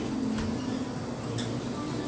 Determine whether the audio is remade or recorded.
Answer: recorded